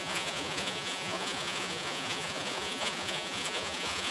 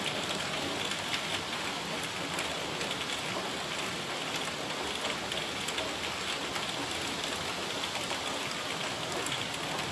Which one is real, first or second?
second